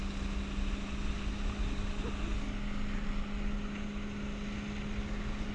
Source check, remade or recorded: recorded